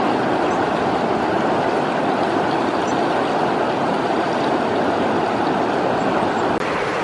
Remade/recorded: recorded